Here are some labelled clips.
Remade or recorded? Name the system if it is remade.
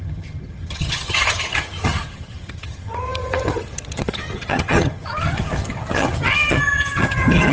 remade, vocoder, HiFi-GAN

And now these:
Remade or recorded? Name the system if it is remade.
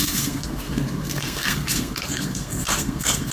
remade, codec, SNAC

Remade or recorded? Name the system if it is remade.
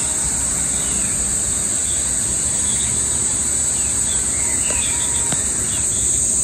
recorded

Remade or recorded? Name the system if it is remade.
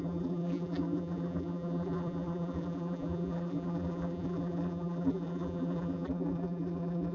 remade, vocoder, BigVGAN v2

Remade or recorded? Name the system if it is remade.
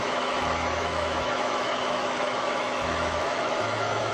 remade, autoencoder, DAC-VAE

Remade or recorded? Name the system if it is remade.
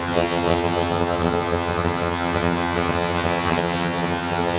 remade, vocoder, HiFi-GAN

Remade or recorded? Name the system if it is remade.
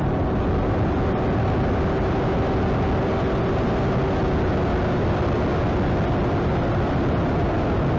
recorded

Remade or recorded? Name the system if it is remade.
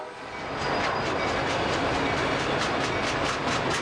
recorded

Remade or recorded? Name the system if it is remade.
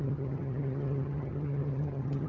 remade, vocoder, HiFi-GAN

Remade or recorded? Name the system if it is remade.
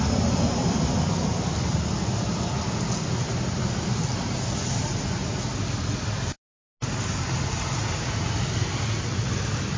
recorded